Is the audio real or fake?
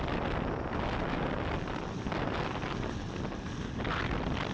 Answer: real